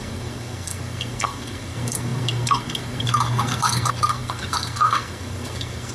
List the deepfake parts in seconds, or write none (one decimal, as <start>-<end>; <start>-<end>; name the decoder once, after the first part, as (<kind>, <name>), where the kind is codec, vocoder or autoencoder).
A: 0.0-5.9 (codec, SNAC)